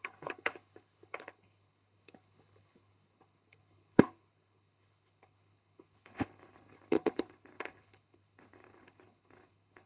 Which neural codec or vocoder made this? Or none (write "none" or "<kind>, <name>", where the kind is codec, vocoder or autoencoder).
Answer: codec, HILCodec